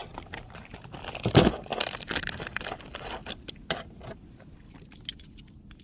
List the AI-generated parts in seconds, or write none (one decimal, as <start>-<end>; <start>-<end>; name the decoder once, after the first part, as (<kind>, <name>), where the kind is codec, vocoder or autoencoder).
none